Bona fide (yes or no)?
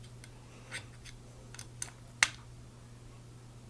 yes